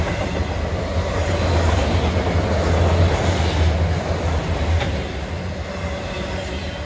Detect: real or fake real